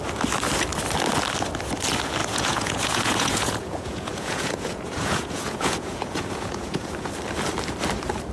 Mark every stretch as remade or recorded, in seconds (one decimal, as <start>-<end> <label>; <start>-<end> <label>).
0.0-2.2 recorded; 2.2-7.1 remade; 7.1-8.3 recorded